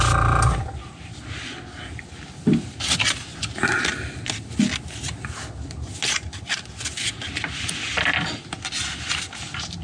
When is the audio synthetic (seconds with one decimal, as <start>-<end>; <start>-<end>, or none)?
none